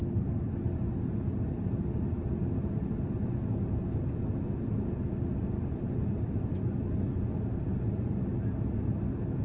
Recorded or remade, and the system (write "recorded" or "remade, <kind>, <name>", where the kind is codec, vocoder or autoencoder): recorded